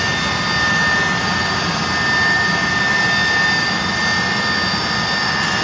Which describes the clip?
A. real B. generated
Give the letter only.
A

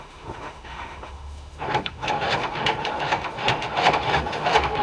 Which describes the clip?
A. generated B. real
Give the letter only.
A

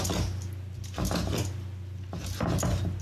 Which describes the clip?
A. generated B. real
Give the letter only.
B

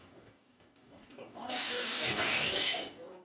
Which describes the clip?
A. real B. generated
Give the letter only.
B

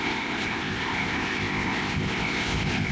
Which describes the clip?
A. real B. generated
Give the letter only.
B